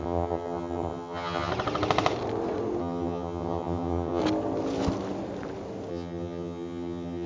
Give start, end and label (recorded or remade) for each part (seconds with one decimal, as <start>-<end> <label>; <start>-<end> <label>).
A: 0.0-1.5 remade; 1.5-2.8 recorded; 2.8-4.2 remade; 4.2-5.9 recorded; 5.9-7.3 remade